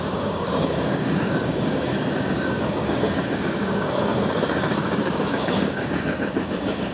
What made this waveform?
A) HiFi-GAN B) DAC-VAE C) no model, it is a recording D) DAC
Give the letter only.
D